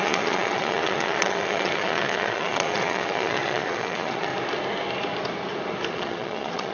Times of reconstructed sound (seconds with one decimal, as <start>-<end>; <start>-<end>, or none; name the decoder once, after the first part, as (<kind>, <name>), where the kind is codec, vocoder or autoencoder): 0.0-4.3 (vocoder, Vocos); 5.9-6.7